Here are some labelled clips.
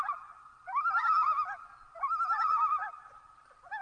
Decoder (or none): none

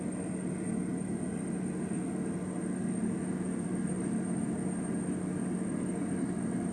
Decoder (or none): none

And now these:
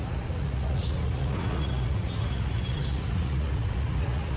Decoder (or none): vocoder, Vocos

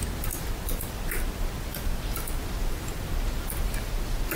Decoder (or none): none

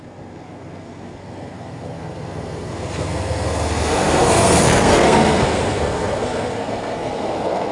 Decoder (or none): codec, SNAC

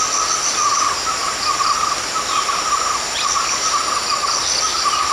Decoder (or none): none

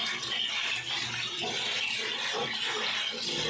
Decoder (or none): none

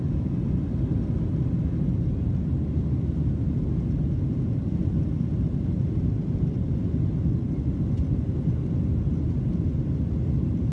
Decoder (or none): none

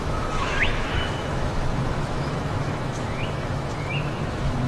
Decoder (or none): autoencoder, DAC-VAE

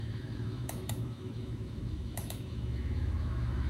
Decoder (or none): autoencoder, DAC-VAE